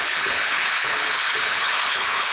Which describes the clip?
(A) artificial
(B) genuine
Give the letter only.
A